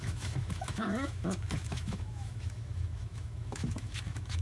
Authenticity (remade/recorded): remade